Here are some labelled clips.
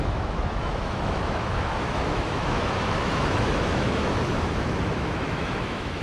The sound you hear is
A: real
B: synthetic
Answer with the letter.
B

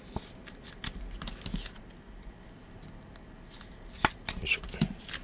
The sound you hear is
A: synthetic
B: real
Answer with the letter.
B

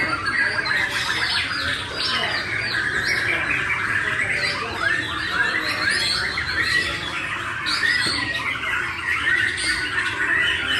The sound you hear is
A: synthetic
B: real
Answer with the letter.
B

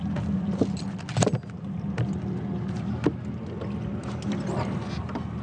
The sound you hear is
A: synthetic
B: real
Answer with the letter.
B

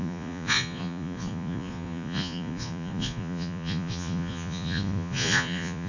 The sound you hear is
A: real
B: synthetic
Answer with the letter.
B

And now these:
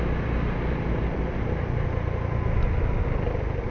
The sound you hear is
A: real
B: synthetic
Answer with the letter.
A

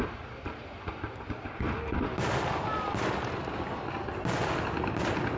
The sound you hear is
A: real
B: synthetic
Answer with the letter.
A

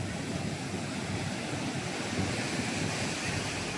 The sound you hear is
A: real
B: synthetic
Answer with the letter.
A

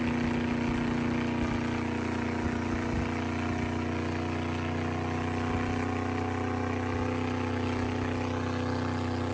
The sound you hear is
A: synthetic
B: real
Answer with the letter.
B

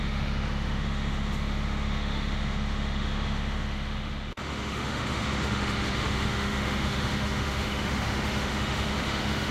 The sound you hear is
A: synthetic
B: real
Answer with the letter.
A